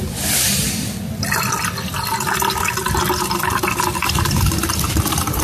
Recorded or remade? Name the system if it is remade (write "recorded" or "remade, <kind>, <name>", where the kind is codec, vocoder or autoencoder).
recorded